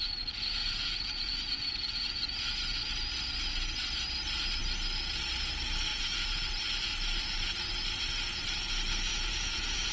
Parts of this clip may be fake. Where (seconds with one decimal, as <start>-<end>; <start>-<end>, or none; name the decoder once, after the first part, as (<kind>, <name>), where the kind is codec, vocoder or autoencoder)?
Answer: 0.6-2.9 (vocoder, Vocos); 5.9-6.5; 9.1-9.9